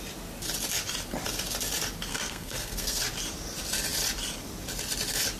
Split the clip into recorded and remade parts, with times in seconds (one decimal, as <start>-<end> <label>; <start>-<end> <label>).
0.0-2.1 recorded; 2.1-3.0 remade; 3.0-5.4 recorded